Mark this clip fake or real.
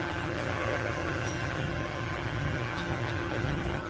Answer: fake